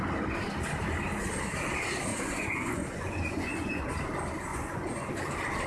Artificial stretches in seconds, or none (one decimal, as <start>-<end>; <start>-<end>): 2.1-3.8; 4.5-5.1